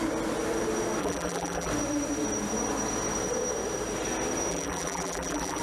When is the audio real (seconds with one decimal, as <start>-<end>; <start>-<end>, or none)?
0.0-1.0; 1.7-4.5